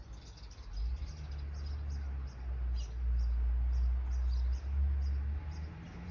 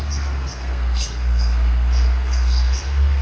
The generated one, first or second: second